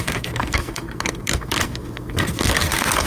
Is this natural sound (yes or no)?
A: no